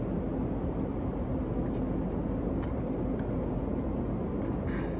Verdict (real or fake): real